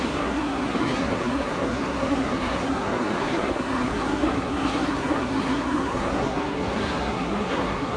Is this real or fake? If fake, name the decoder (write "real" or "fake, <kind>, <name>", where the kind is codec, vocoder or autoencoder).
fake, codec, SNAC